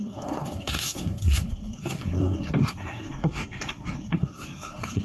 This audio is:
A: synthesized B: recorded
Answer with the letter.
A